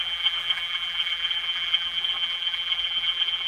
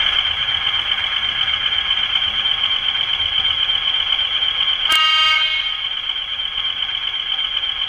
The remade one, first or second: first